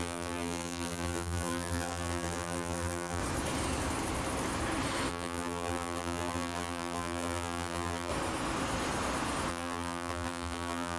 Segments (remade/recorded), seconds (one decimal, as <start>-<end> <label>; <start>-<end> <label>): 0.0-3.2 remade; 3.2-5.1 recorded; 5.1-8.1 remade; 8.1-9.5 recorded; 9.5-11.0 remade